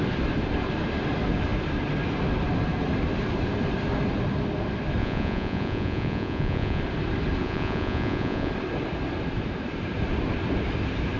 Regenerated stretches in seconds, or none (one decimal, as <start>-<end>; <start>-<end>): 5.0-6.8; 7.4-8.5